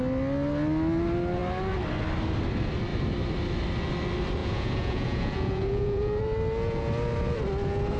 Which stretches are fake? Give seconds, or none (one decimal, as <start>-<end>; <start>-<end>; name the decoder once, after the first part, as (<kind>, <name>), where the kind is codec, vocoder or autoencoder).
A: 4.4-6.2 (vocoder, Vocos)